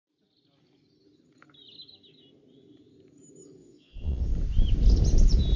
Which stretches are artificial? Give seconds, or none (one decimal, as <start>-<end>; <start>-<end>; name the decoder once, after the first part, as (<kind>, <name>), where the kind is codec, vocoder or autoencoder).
3.6-4.2 (vocoder, Vocos)